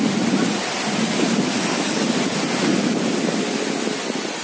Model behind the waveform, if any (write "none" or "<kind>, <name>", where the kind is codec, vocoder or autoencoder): none